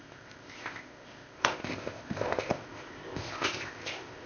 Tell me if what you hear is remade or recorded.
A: remade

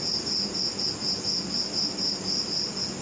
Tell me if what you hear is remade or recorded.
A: recorded